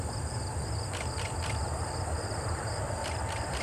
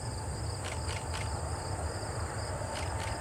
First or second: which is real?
second